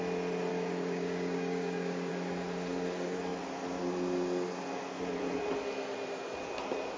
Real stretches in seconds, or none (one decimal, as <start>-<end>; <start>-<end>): 0.0-0.5; 2.1-7.0